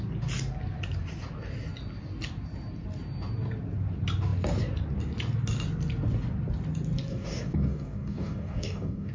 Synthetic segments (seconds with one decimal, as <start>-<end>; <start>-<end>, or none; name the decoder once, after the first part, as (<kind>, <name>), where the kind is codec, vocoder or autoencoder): 7.1-9.1 (codec, DAC)